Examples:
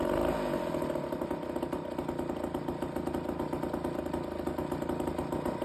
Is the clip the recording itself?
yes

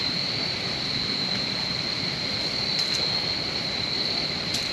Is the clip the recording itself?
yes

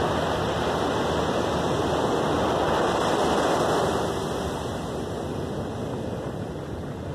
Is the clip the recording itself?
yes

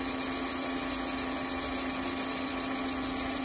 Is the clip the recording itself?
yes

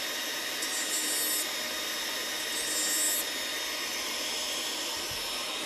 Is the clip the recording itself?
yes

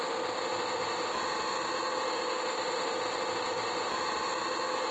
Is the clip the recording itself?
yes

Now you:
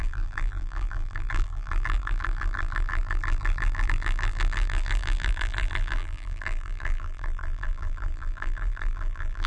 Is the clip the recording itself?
no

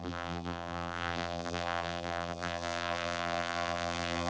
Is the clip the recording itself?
no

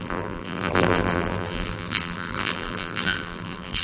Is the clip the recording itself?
no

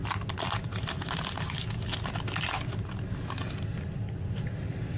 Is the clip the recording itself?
yes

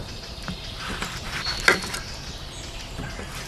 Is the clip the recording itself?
yes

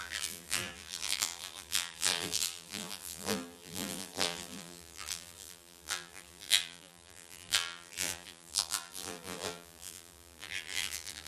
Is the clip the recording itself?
no